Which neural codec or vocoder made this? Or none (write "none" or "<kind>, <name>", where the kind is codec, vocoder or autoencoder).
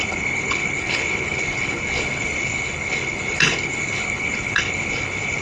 codec, HILCodec